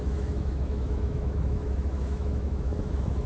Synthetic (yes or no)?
yes